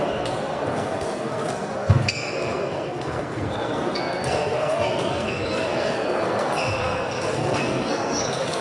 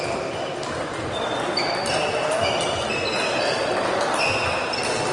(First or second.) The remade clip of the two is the first